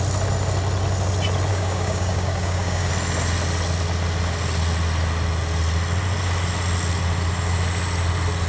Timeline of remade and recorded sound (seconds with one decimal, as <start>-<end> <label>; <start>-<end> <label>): 0.0-1.5 recorded; 1.5-2.9 remade; 2.9-8.5 recorded